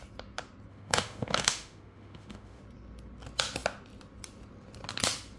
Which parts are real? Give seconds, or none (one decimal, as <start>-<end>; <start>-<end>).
0.0-0.7; 2.6-5.4